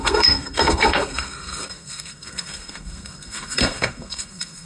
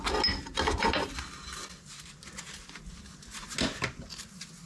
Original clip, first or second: second